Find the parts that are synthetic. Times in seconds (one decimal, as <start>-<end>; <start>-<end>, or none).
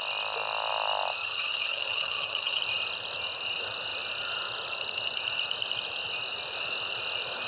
1.2-2.6